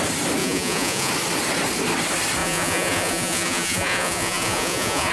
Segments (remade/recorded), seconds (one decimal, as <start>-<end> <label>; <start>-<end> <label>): 0.0-0.4 recorded; 0.4-1.1 remade; 1.1-2.4 recorded; 2.4-5.1 remade

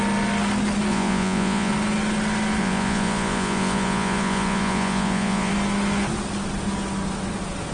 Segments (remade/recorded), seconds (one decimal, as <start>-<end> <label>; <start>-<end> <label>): 0.0-0.9 recorded; 0.9-1.7 remade; 1.7-2.6 recorded; 2.6-5.5 remade; 5.5-7.7 recorded